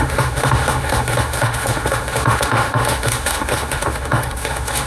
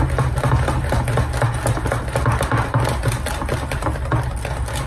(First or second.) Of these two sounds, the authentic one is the second